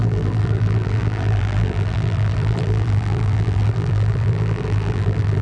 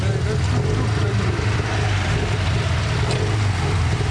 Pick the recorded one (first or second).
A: second